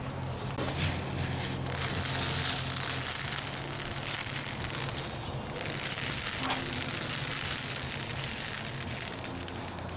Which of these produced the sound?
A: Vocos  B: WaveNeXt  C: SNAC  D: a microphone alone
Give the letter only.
D